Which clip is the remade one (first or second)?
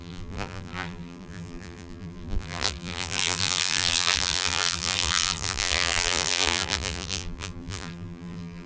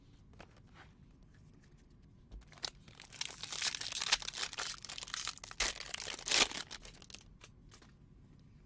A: first